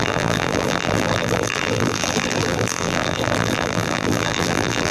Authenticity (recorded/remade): remade